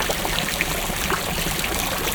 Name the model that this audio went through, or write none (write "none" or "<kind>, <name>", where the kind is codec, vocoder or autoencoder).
none